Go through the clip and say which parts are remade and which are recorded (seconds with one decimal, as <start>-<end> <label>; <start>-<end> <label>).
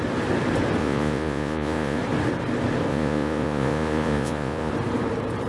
0.0-0.8 recorded; 0.8-2.0 remade; 2.0-2.9 recorded; 2.9-4.7 remade; 4.7-5.5 recorded